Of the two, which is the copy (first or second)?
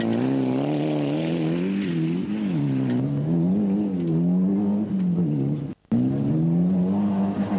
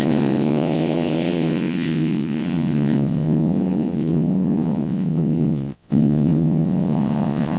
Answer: second